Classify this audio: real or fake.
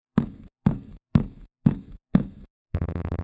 fake